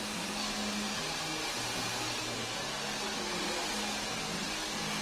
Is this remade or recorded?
recorded